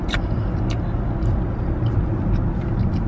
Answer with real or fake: real